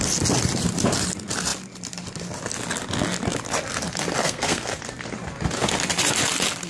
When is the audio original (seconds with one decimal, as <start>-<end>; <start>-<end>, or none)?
0.0-4.2; 4.8-6.7